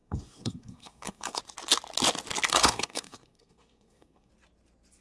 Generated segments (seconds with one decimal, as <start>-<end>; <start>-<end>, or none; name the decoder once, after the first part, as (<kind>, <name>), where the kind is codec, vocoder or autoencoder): 0.0-1.4 (codec, SNAC); 2.5-4.3